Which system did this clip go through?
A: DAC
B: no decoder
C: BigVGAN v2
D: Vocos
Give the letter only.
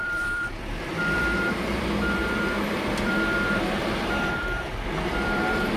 C